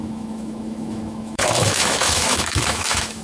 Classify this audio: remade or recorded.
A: remade